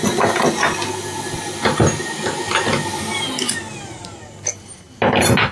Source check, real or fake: real